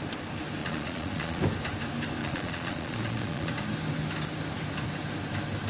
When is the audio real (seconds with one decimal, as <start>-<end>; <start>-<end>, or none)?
0.0-0.6; 1.4-2.2; 3.5-5.7